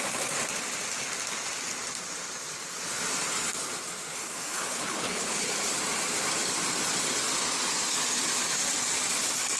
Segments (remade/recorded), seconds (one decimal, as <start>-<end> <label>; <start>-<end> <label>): 0.0-4.1 recorded; 4.1-5.5 remade; 5.5-9.6 recorded